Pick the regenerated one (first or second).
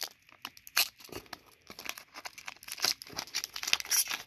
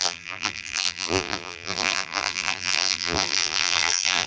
second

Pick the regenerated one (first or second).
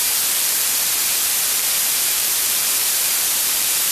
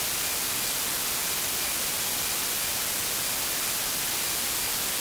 first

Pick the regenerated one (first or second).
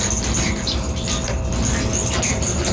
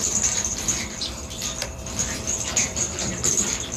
second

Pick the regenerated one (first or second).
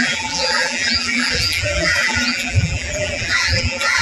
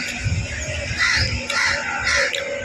first